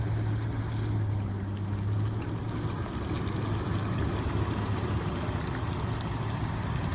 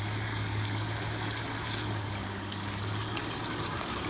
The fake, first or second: second